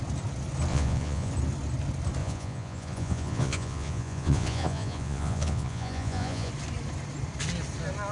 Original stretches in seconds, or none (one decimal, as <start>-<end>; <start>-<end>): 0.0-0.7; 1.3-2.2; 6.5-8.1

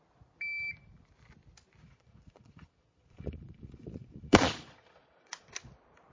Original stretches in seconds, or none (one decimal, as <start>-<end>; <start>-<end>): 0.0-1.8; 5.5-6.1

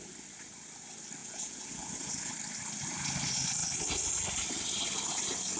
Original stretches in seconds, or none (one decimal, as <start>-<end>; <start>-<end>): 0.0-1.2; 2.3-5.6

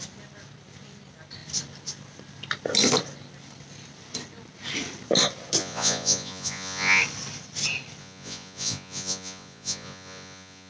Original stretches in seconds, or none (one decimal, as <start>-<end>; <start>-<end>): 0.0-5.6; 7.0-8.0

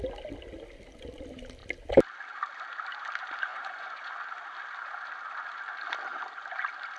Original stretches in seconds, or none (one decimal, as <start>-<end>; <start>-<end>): 0.0-3.5; 4.1-7.0

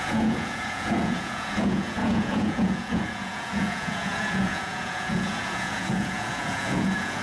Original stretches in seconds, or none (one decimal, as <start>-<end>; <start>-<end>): none